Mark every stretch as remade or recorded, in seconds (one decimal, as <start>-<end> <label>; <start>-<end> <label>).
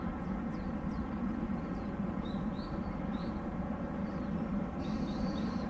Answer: 0.0-4.0 remade; 4.0-4.8 recorded; 4.8-5.7 remade